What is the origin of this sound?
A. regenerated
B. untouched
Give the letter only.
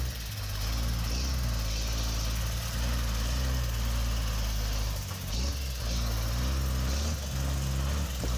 B